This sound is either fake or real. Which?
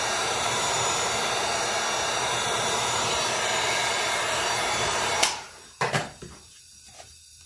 fake